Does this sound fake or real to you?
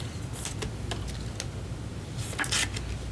real